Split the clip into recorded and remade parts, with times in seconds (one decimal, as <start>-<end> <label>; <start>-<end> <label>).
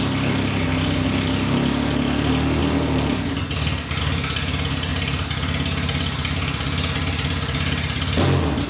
0.0-8.7 recorded